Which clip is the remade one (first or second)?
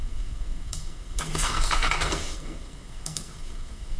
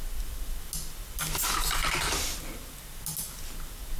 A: first